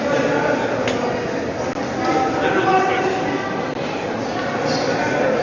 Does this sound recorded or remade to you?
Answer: recorded